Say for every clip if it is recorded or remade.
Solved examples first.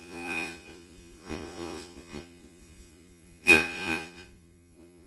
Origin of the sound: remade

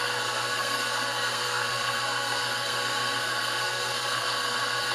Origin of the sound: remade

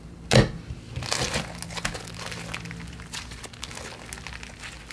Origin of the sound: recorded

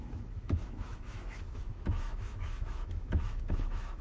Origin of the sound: remade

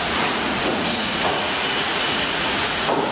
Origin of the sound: remade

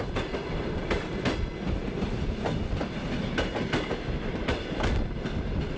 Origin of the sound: recorded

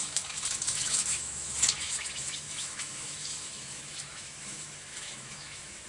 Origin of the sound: remade